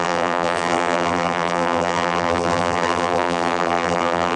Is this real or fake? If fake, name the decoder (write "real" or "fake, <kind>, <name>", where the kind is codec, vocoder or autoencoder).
fake, vocoder, BigVGAN v2